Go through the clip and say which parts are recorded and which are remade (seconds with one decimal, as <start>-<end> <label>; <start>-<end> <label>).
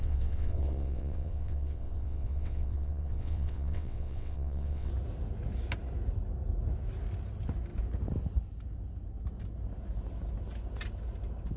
0.0-4.9 remade; 4.9-11.6 recorded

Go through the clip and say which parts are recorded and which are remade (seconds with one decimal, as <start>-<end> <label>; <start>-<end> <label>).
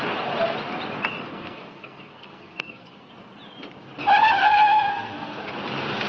0.0-1.3 recorded; 1.3-3.1 remade; 3.1-4.4 recorded; 4.4-5.4 remade; 5.4-6.1 recorded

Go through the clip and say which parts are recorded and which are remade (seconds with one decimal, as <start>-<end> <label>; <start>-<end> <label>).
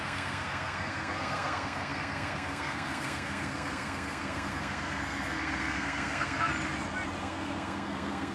0.0-6.5 remade; 6.5-7.2 recorded; 7.2-8.3 remade